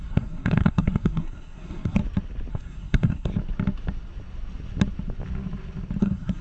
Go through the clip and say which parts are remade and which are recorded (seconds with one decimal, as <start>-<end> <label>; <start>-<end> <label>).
0.0-2.0 remade; 2.0-2.5 recorded; 2.5-3.3 remade; 3.3-6.0 recorded; 6.0-6.4 remade